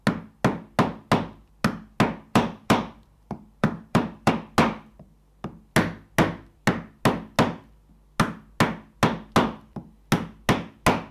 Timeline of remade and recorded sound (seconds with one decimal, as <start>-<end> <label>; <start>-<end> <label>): 0.0-2.3 recorded; 2.3-4.3 remade; 4.3-11.1 recorded